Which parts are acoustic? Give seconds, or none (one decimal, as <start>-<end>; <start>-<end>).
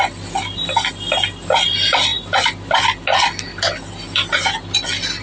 0.0-5.2